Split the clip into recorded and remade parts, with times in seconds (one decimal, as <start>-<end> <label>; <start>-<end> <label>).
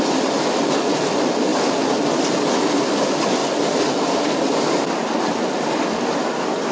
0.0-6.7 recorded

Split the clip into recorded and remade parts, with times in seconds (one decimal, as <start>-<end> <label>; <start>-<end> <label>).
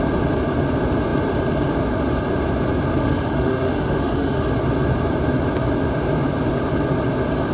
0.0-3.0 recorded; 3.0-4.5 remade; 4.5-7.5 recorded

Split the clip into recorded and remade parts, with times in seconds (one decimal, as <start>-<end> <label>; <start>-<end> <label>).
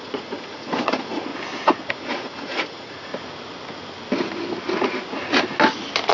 0.0-1.3 remade; 1.3-1.9 recorded; 1.9-3.1 remade; 3.1-6.1 recorded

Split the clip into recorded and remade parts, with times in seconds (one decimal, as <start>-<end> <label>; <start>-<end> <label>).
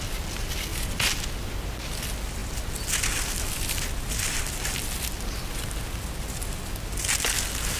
0.0-2.4 recorded; 2.4-3.8 remade; 3.8-7.8 recorded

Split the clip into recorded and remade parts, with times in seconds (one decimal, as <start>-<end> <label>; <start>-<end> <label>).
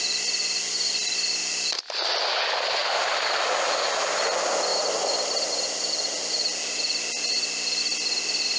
0.0-2.8 recorded; 2.8-3.5 remade; 3.5-4.7 recorded; 4.7-5.9 remade; 5.9-8.6 recorded